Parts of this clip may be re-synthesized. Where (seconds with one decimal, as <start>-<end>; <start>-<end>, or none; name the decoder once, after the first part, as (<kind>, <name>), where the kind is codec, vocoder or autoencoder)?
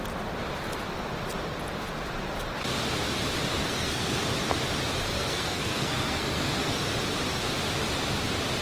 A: 3.6-4.3 (codec, SNAC); 5.0-6.8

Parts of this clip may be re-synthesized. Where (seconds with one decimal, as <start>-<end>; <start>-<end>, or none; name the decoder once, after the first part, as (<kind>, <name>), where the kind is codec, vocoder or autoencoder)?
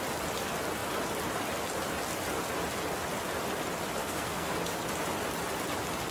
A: 4.0-4.5 (codec, SNAC)